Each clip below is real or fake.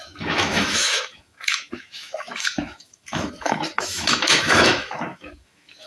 fake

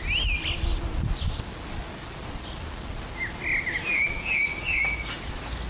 real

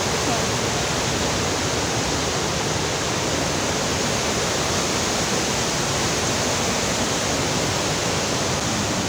real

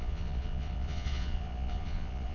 fake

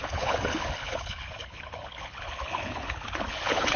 fake